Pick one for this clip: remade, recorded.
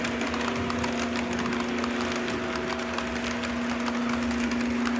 recorded